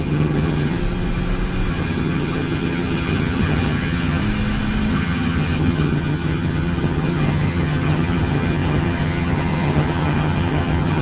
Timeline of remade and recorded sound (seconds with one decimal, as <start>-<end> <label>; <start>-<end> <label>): 0.0-0.8 remade; 0.8-1.7 recorded; 1.7-4.2 remade; 4.2-4.9 recorded; 4.9-11.0 remade